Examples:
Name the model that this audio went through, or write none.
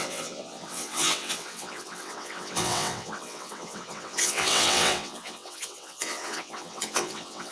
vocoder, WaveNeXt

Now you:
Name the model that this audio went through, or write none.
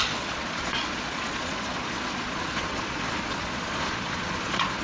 vocoder, Vocos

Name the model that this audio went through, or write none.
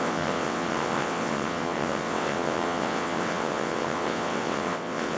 vocoder, WaveNeXt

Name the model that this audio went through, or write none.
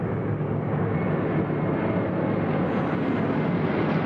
none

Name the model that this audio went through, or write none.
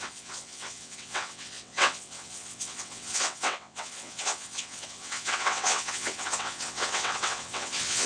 vocoder, WaveNeXt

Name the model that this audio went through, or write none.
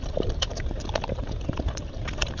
vocoder, BigVGAN v2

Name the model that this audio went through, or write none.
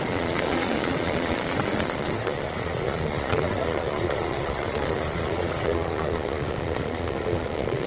vocoder, Vocos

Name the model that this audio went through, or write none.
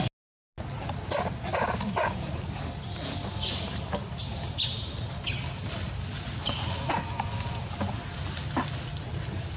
none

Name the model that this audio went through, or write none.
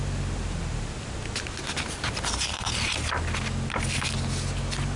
none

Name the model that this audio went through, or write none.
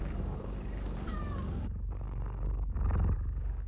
codec, DAC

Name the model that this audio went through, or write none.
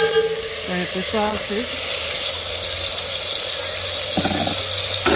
none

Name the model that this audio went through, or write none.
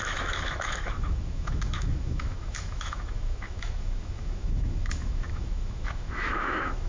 autoencoder, DAC-VAE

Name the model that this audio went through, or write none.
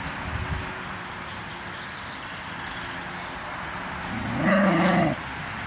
none